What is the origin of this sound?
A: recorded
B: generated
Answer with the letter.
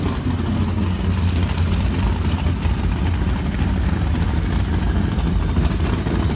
A